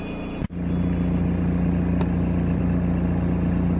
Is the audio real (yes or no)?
yes